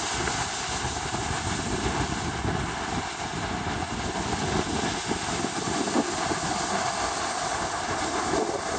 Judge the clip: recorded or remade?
recorded